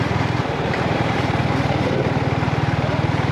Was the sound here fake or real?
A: fake